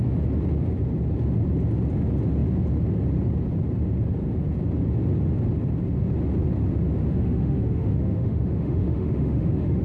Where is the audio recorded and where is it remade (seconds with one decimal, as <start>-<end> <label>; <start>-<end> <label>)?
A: 0.0-7.0 recorded; 7.0-9.8 remade